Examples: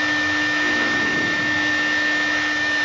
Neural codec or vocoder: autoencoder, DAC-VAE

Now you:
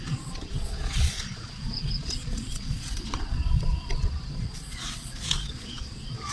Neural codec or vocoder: vocoder, Vocos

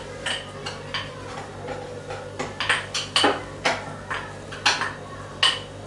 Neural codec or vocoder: none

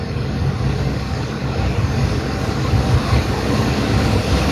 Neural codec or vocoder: codec, DAC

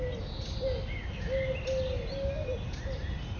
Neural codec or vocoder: none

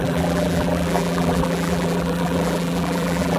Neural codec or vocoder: vocoder, BigVGAN v2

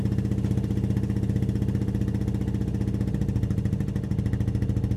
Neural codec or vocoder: none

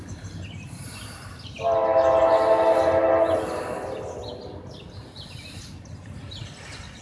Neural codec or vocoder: none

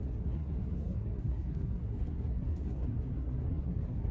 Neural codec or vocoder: codec, SNAC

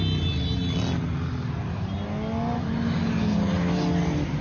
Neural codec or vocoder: none